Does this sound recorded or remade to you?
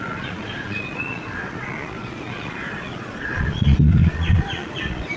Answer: remade